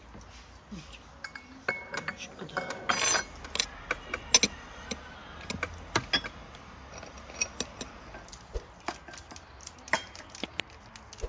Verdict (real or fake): real